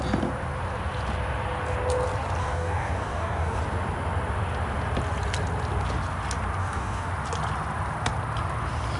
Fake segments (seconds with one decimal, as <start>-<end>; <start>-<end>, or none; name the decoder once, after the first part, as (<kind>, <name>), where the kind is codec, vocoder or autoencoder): 2.4-3.6 (codec, DAC); 6.6-7.1